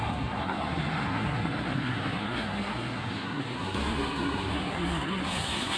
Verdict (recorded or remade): remade